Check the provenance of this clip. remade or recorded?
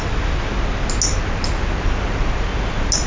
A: recorded